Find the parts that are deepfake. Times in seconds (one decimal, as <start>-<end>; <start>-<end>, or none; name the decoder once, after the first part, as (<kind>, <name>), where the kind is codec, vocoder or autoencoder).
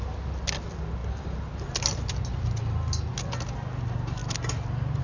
none